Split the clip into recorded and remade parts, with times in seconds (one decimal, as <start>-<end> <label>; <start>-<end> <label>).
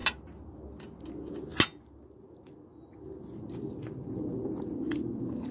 0.0-5.5 recorded